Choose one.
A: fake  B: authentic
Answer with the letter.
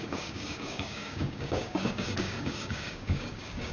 A